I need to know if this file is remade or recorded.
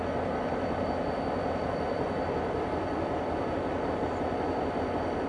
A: recorded